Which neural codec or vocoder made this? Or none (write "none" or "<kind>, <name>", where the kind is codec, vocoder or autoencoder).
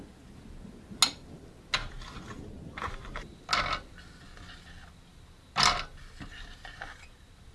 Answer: none